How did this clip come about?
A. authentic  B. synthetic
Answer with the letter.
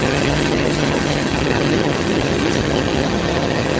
B